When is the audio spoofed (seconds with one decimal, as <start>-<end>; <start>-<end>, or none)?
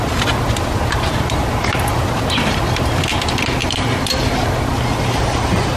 3.6-4.6